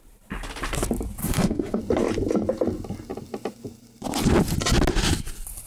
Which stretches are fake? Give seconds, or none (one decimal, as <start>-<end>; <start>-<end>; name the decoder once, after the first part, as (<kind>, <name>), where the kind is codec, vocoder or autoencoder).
1.2-1.8 (autoencoder, DAC-VAE)